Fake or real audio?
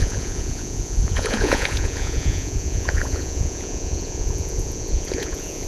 fake